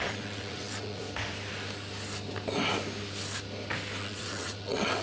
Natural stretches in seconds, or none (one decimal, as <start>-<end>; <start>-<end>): 1.0-4.0